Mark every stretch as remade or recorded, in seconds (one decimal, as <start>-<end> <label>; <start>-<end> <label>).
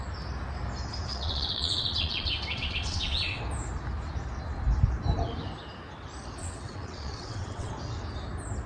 0.0-1.1 recorded; 1.1-3.4 remade; 3.4-6.4 recorded; 6.4-7.7 remade; 7.7-8.7 recorded